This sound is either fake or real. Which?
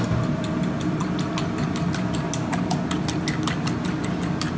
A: real